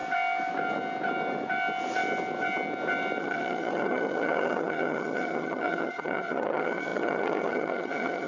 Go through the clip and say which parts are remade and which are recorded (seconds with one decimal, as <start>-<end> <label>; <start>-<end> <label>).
0.0-3.2 recorded; 3.2-8.3 remade

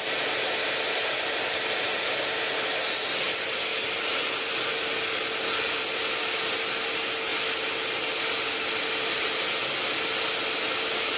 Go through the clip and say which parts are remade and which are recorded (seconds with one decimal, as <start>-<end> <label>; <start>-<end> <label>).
0.0-11.2 recorded